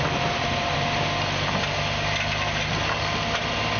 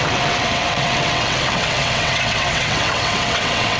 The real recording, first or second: first